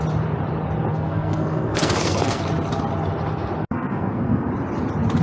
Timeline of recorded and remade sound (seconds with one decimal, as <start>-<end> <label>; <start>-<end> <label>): 0.0-0.9 recorded; 0.9-2.4 remade; 2.4-3.6 recorded; 3.6-4.5 remade; 4.5-5.2 recorded

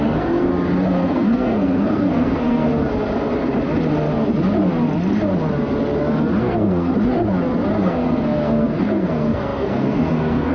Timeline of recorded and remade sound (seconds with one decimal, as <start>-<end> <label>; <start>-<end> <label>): 0.0-0.5 remade; 0.5-1.1 recorded; 1.1-2.7 remade; 2.7-6.4 recorded; 6.4-6.9 remade; 6.9-7.8 recorded; 7.8-10.5 remade